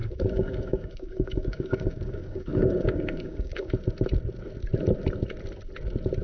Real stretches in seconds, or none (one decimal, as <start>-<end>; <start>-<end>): 3.7-6.2